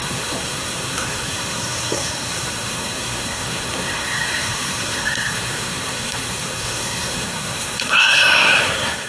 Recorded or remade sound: remade